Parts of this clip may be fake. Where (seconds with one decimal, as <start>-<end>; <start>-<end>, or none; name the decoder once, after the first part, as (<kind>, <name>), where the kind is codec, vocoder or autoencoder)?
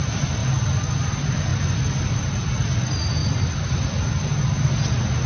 0.0-0.4 (vocoder, BigVGAN v2); 1.1-1.5; 2.1-3.2